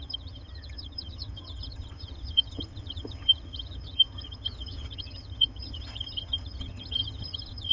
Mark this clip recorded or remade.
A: remade